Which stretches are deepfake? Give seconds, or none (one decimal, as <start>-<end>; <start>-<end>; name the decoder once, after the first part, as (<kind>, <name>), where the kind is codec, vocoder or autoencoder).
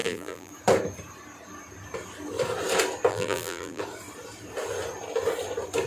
0.0-0.5 (vocoder, BigVGAN v2); 3.1-3.8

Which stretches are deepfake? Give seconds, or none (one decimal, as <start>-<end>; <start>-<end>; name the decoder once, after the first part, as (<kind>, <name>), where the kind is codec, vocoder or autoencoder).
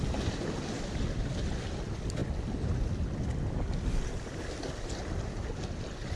none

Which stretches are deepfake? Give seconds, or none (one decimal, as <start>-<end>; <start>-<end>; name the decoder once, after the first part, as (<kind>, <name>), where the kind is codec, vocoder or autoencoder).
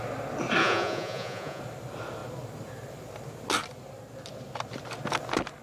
0.6-1.6 (vocoder, Vocos)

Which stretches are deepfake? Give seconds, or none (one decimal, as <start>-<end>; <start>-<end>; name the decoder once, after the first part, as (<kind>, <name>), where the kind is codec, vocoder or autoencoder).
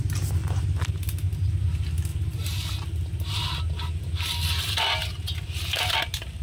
none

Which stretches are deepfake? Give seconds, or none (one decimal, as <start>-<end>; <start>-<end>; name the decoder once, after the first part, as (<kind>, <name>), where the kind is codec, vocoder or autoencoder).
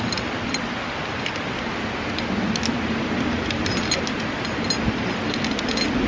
none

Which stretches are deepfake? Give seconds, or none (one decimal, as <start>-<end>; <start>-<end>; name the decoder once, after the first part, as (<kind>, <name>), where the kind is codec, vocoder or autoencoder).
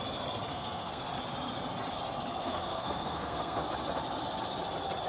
0.5-1.0 (codec, SNAC); 2.4-3.7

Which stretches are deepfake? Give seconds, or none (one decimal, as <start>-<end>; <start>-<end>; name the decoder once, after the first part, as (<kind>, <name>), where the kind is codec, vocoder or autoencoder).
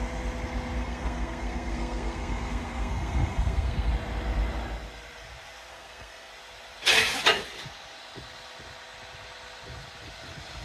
0.8-3.9 (codec, SNAC); 5.7-6.3